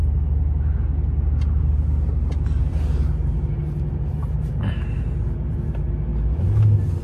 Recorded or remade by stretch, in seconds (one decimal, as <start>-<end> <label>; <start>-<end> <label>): 0.0-2.6 recorded; 2.6-4.1 remade; 4.1-7.0 recorded